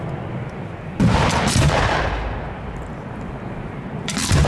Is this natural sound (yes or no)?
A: yes